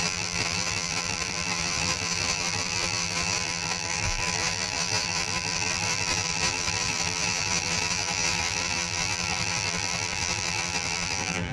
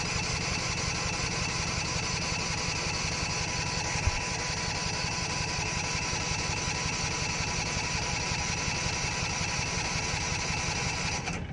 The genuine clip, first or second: second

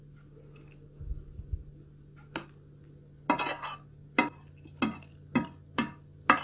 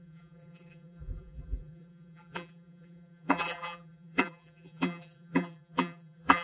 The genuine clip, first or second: first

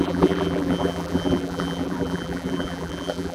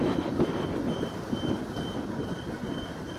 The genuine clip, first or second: second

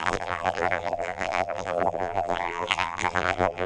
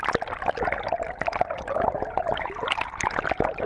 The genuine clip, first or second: second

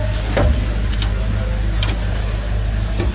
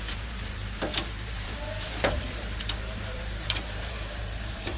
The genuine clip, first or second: first